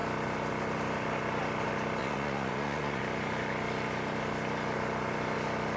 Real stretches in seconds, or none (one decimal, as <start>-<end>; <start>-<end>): 0.0-2.0; 3.0-5.8

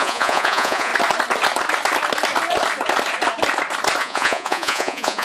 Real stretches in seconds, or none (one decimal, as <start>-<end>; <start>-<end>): 0.9-4.0